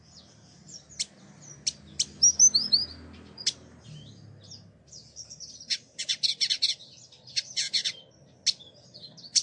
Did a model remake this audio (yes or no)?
no